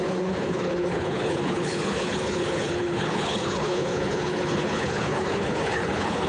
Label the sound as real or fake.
fake